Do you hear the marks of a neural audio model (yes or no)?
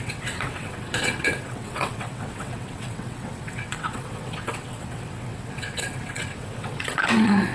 yes